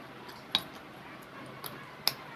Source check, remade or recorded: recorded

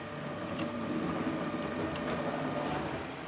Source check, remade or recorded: recorded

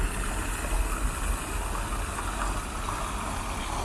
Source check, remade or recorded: recorded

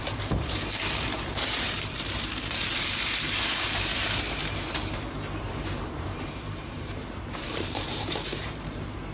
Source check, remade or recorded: remade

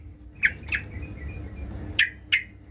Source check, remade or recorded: recorded